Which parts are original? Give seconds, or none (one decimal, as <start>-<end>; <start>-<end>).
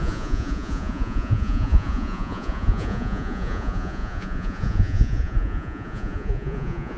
none